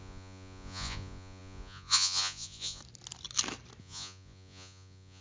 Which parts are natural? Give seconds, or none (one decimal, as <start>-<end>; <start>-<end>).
2.8-3.8